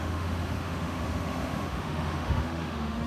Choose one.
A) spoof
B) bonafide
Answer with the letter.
A